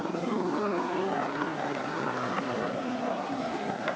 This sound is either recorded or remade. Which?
remade